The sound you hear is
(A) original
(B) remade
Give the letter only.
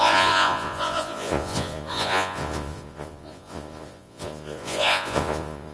B